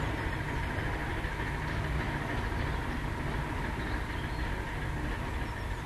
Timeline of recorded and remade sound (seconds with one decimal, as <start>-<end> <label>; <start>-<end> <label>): 0.0-5.9 recorded